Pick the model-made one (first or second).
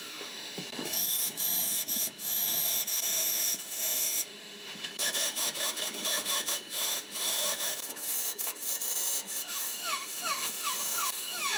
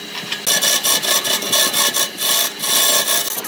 first